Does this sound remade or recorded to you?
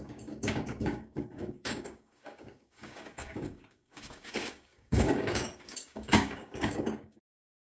remade